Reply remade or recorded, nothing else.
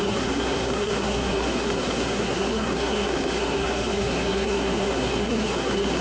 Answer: remade